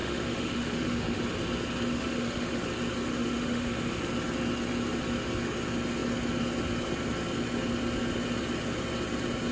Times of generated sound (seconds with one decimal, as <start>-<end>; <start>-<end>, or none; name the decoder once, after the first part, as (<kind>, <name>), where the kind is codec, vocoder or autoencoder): 0.0-1.2 (autoencoder, DAC-VAE); 1.9-2.6; 3.1-3.9